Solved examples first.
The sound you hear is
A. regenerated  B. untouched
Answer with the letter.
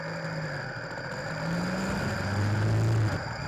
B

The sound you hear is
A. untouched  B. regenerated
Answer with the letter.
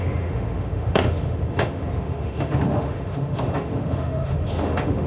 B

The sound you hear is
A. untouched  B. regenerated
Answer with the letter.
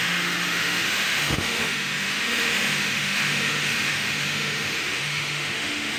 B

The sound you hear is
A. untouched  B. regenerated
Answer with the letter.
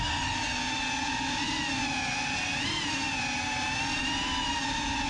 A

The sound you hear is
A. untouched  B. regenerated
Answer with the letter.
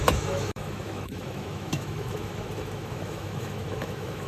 B